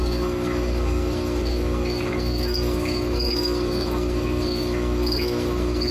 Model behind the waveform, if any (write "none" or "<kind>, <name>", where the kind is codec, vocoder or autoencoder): codec, SNAC